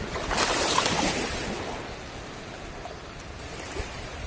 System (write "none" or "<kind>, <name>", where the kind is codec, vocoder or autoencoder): none